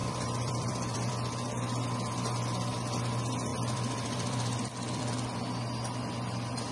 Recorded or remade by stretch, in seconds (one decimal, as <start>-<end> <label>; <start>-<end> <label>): 0.0-1.1 remade; 1.1-3.5 recorded; 3.5-5.0 remade; 5.0-6.7 recorded